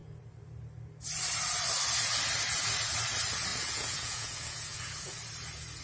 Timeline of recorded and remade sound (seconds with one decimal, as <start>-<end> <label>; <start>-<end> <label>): 0.0-3.5 recorded; 3.5-5.1 remade; 5.1-5.8 recorded